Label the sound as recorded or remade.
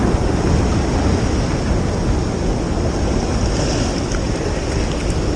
recorded